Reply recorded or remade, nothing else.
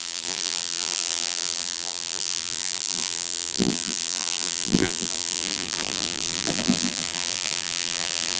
remade